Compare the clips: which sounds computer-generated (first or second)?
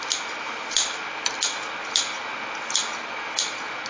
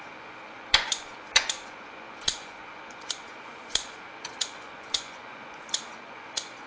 second